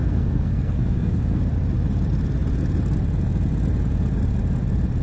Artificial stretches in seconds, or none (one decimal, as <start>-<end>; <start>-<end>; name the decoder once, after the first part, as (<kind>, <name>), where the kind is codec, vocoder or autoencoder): 0.0-1.4 (codec, SNAC)